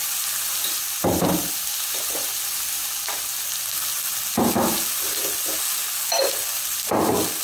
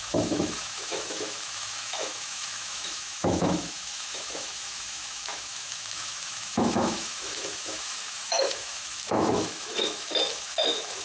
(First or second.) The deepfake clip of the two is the second